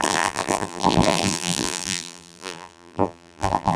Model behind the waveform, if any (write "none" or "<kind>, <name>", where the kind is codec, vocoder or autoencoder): vocoder, BigVGAN v2